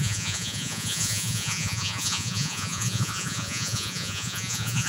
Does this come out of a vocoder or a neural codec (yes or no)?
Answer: yes